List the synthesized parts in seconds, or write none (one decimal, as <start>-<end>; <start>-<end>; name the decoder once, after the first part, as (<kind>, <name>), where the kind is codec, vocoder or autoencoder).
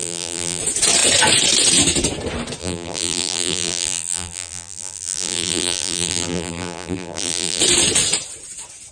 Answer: 0.0-0.6 (vocoder, BigVGAN v2); 2.6-7.6